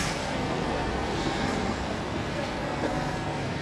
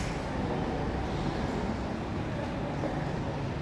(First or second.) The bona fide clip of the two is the second